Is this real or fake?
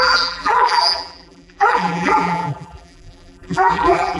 fake